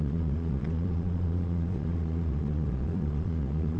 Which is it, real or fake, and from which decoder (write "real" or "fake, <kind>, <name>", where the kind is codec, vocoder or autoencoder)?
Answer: fake, vocoder, Vocos